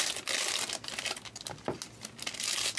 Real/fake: real